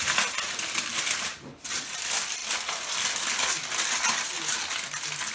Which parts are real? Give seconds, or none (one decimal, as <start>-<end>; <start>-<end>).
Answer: 0.0-5.3